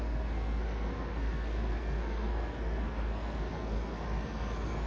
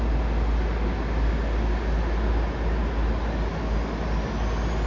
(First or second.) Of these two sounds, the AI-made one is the first